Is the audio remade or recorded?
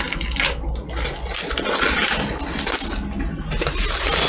recorded